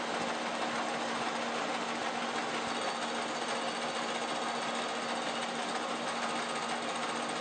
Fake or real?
real